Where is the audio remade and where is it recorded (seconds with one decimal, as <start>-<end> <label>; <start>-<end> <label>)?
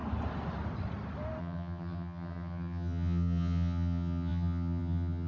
0.0-1.4 recorded; 1.4-5.3 remade